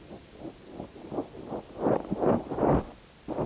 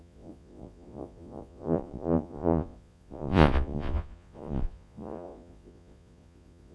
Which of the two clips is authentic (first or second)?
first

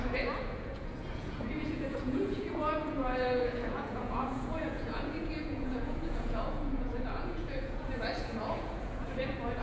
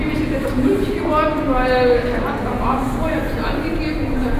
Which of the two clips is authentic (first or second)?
second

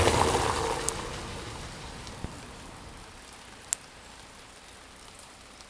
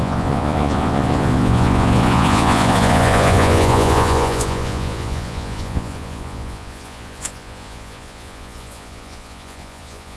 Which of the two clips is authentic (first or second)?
first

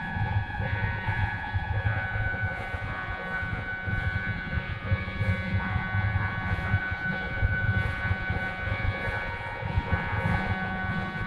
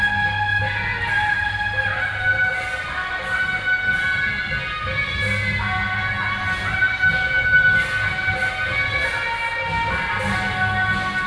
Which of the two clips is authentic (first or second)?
second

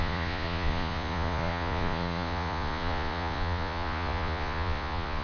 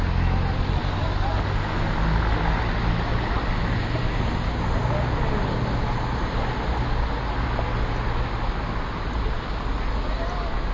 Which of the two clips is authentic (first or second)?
second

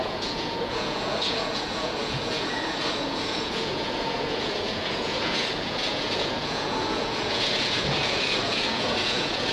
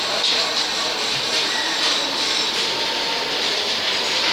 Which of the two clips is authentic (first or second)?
second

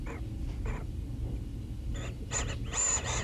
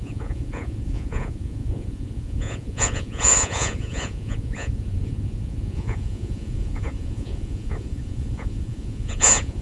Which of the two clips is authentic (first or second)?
first